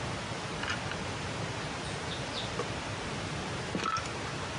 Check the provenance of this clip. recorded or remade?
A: recorded